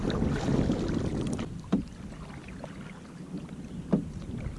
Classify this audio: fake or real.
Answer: real